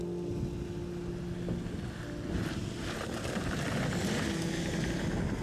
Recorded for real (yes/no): yes